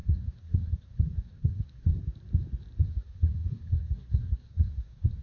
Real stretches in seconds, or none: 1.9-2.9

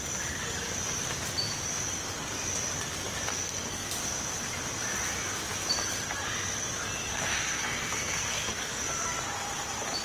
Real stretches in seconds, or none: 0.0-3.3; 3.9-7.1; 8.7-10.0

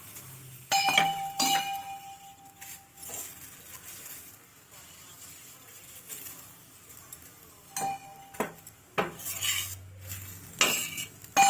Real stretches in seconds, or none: 0.0-11.5